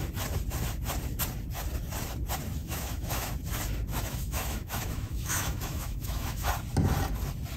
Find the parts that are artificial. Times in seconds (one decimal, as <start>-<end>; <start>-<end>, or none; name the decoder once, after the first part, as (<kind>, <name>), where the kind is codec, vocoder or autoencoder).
2.6-3.3 (autoencoder, DAC-VAE); 3.9-6.5